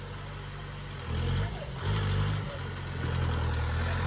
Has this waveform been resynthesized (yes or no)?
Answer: no